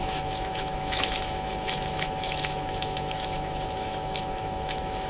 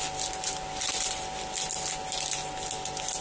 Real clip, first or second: second